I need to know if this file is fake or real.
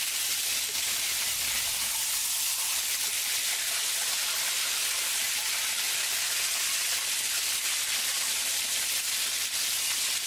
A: real